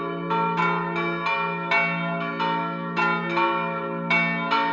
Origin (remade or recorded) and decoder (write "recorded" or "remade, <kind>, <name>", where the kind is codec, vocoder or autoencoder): recorded